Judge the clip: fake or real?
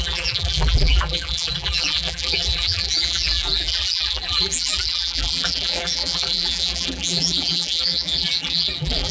fake